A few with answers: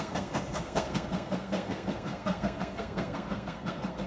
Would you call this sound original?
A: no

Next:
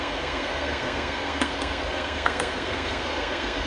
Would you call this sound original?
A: no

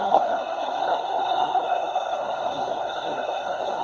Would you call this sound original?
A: no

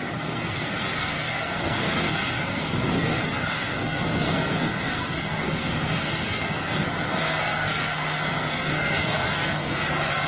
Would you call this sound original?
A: no